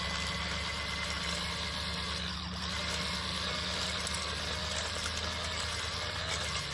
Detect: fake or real real